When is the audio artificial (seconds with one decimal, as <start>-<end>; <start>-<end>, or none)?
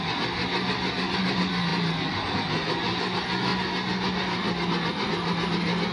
none